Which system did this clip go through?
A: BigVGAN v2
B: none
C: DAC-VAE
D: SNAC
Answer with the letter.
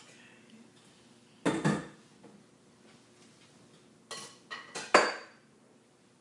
B